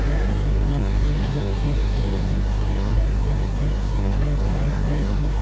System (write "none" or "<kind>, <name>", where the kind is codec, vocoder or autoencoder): codec, SNAC